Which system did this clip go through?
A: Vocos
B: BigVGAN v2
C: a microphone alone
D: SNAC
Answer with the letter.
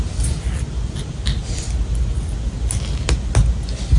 C